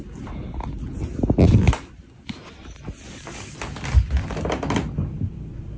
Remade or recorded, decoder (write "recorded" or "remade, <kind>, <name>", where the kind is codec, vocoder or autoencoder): recorded